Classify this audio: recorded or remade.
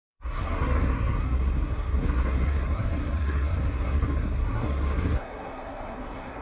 remade